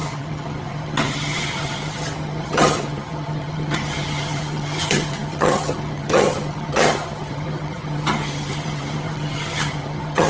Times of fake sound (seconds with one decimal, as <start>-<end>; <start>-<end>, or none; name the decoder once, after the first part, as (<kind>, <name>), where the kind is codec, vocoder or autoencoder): 0.0-10.3 (vocoder, HiFi-GAN)